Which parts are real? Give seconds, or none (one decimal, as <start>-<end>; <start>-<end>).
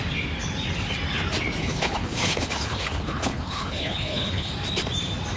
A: 0.0-1.6; 4.5-5.4